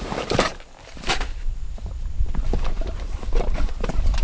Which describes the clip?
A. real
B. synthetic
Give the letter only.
B